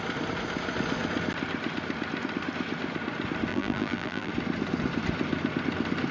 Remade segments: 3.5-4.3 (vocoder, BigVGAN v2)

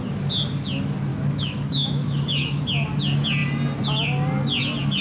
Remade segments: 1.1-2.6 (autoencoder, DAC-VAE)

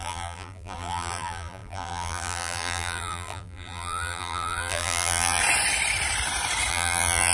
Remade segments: 0.0-5.4 (vocoder, BigVGAN v2); 6.7-7.3